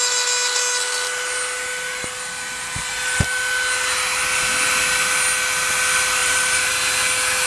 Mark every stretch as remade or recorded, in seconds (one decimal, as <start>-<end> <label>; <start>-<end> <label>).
0.0-6.2 recorded; 6.2-6.7 remade; 6.7-7.5 recorded